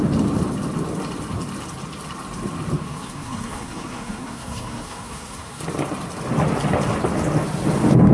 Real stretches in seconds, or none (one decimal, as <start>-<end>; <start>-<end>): 0.0-2.8; 5.6-8.1

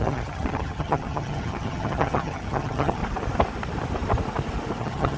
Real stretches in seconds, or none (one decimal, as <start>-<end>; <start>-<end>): 3.0-4.8

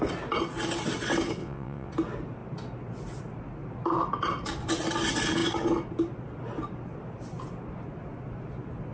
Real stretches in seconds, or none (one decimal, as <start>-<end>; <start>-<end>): 0.0-1.4; 1.9-8.9

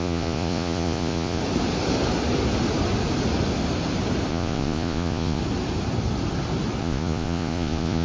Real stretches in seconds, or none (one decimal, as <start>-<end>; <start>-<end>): 1.4-4.3; 5.4-6.8